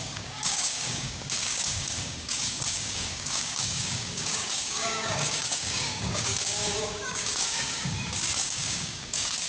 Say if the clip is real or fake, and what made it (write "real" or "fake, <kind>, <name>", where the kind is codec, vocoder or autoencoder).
fake, codec, DAC